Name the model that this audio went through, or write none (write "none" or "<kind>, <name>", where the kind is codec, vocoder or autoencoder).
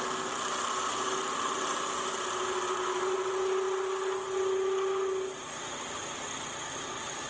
none